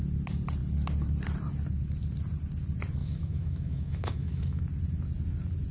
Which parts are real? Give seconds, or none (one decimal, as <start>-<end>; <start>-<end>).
0.0-3.0; 4.6-5.7

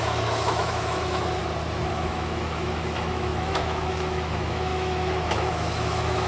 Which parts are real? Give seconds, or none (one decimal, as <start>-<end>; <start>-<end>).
1.4-1.9

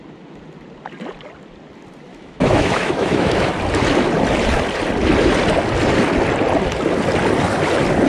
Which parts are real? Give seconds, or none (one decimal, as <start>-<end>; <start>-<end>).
0.0-2.1; 3.5-8.1

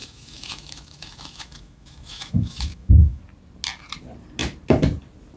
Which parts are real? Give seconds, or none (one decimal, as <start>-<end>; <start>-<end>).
3.2-5.4

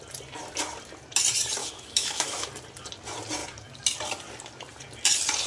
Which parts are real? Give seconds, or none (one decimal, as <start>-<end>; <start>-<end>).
0.0-1.6; 2.5-5.5

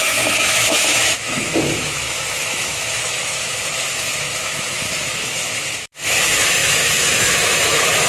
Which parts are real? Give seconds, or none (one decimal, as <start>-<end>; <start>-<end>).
none